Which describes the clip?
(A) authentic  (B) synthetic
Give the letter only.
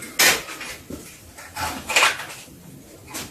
A